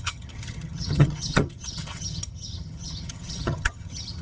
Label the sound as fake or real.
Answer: fake